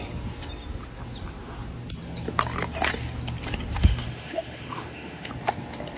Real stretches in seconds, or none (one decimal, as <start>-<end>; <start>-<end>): 0.0-3.8; 5.3-6.0